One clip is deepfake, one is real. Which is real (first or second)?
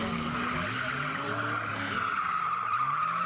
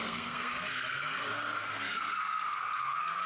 first